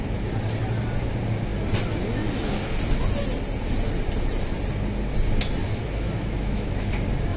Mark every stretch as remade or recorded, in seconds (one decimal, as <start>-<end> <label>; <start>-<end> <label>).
0.0-5.6 recorded; 5.6-6.9 remade; 6.9-7.4 recorded